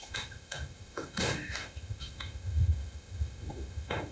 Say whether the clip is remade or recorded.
remade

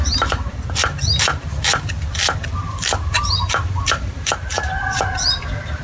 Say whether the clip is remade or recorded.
remade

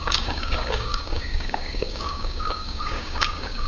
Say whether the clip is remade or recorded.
remade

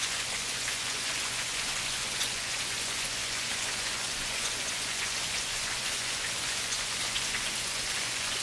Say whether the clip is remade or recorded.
remade